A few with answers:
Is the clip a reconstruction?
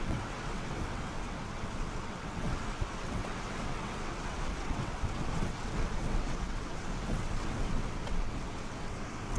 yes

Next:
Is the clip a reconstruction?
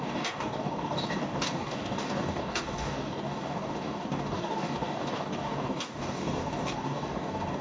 yes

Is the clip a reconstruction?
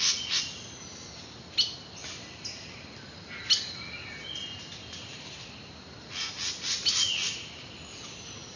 no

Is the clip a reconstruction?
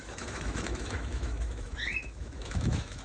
yes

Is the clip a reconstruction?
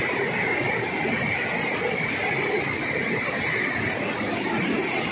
no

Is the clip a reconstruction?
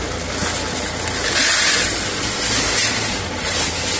no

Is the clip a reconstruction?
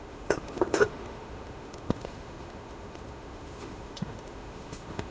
yes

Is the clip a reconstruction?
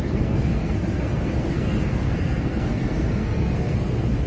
yes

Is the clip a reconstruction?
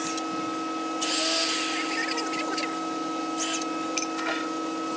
no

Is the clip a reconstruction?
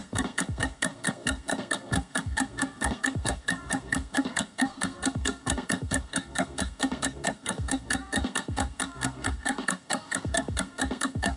yes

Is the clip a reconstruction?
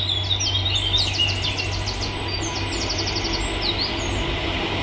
no